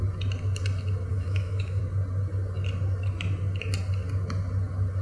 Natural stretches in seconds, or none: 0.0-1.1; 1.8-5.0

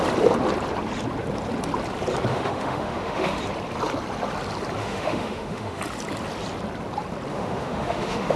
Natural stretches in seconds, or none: 0.0-2.3; 3.4-4.8; 5.8-7.3

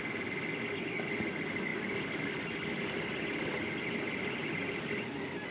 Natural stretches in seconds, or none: 0.0-5.5

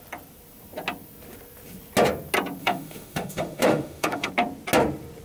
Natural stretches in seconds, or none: 0.0-2.6; 4.3-5.2

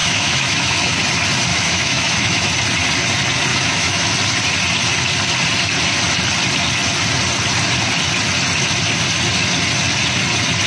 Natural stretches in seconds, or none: 1.0-1.5; 2.5-3.5; 4.1-10.7

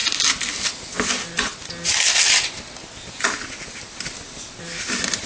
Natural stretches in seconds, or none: 0.0-5.3

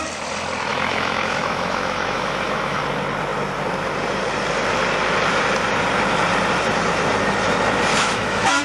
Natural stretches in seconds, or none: 0.0-0.7; 2.8-7.9